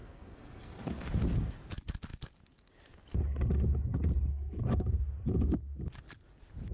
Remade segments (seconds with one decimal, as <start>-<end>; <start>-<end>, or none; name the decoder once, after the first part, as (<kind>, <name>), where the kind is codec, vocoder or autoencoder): 0.0-0.8 (codec, SNAC)